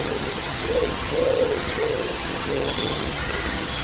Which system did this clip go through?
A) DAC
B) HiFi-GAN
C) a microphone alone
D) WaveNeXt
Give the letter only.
B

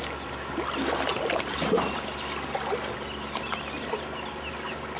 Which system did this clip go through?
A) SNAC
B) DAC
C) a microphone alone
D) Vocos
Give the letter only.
C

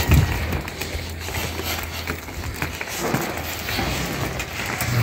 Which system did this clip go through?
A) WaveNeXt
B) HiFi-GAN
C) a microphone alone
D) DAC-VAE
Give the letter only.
C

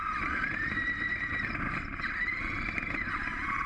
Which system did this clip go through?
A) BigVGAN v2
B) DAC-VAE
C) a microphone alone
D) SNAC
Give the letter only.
A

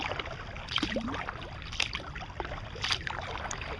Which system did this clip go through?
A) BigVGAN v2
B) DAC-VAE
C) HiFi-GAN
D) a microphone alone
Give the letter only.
A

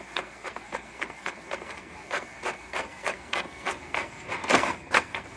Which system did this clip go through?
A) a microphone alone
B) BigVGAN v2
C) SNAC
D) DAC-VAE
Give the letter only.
C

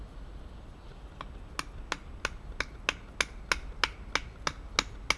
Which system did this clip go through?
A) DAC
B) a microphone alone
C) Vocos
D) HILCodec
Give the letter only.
B